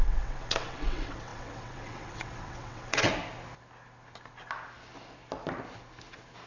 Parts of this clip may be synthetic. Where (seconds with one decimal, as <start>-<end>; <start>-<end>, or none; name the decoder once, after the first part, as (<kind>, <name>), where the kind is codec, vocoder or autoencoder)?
0.0-3.1 (vocoder, WaveNeXt)